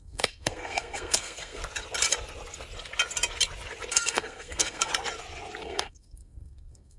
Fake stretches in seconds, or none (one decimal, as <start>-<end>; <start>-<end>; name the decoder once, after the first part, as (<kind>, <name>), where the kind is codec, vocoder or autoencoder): 0.0-1.6 (codec, SNAC); 3.9-4.9; 5.6-7.0